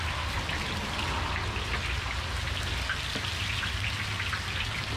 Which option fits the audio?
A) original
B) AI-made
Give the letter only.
A